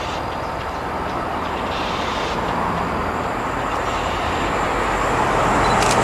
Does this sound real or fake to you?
real